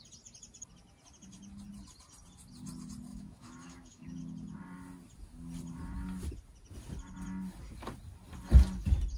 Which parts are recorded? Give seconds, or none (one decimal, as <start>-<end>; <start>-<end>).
0.0-3.1; 4.2-9.2